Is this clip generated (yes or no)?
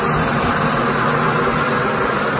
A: no